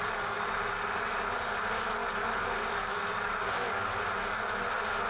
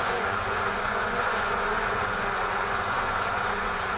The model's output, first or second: second